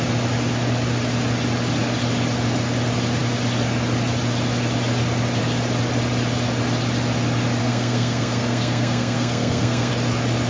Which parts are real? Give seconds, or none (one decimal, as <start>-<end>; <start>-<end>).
0.0-7.6; 9.9-10.5